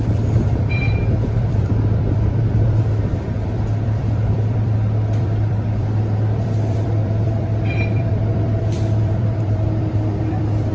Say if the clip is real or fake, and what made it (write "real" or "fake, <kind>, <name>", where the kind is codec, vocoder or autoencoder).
fake, vocoder, BigVGAN v2